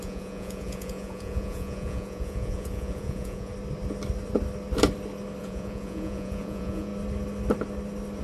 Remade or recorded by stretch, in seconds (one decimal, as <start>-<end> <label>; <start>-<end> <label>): 0.0-3.5 remade; 3.5-5.4 recorded; 5.4-6.9 remade; 6.9-8.2 recorded